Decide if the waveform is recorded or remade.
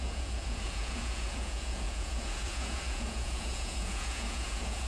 remade